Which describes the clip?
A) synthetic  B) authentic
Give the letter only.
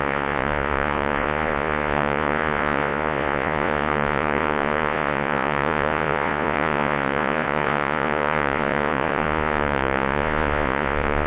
A